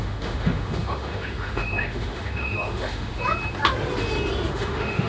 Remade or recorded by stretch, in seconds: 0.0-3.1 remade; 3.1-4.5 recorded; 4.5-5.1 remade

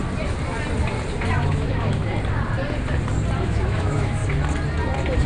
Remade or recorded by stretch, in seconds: 0.0-1.4 recorded; 1.4-2.0 remade; 2.0-3.4 recorded; 3.4-4.2 remade; 4.2-5.3 recorded

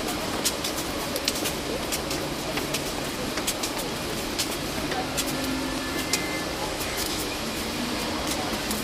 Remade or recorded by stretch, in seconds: 0.0-6.6 recorded; 6.6-7.6 remade; 7.6-8.8 recorded

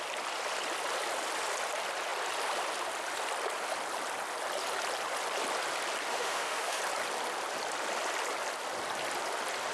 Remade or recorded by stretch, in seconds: 0.0-6.1 recorded; 6.1-6.8 remade; 6.8-9.7 recorded

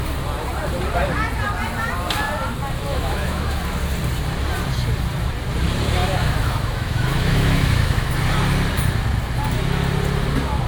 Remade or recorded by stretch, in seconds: 0.0-2.9 recorded; 2.9-3.6 remade; 3.6-6.0 recorded; 6.0-8.1 remade; 8.1-10.7 recorded

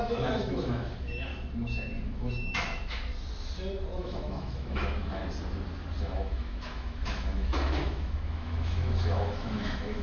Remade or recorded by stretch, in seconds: 0.0-1.3 remade; 1.3-2.0 recorded; 2.0-3.1 remade; 3.1-4.0 recorded; 4.0-5.2 remade; 5.2-6.0 recorded; 6.0-10.0 remade

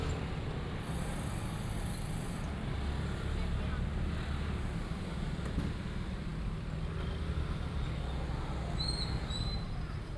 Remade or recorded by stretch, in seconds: 0.0-10.2 recorded